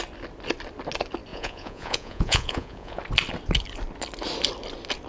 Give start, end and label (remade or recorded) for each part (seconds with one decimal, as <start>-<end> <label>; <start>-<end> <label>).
0.0-1.3 recorded; 1.3-3.0 remade; 3.0-5.1 recorded